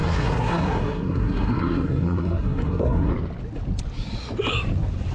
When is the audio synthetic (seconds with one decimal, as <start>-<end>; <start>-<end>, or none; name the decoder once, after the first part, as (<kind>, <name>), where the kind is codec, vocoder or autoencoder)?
0.0-3.1 (codec, SNAC)